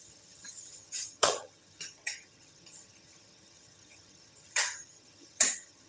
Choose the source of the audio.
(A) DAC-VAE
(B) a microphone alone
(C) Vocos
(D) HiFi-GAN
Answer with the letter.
D